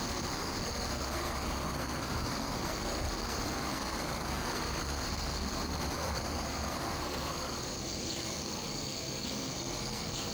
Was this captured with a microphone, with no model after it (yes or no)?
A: no